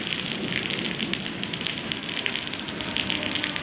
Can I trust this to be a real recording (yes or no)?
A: yes